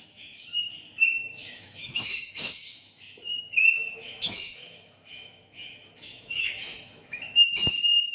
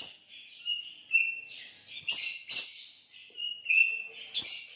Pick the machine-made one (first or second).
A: first